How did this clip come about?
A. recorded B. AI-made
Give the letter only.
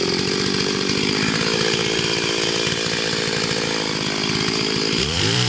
B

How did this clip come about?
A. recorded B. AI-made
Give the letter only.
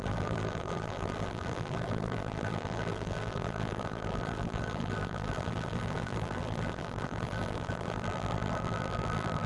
B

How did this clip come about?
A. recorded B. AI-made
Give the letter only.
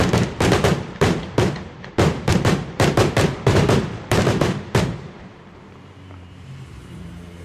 B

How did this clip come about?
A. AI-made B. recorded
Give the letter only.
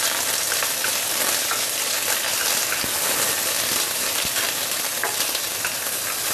A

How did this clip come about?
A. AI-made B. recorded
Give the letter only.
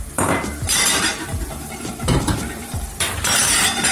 A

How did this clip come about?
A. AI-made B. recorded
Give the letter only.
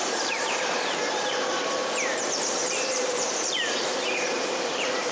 A